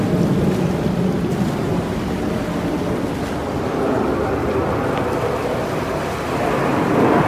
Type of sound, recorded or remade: recorded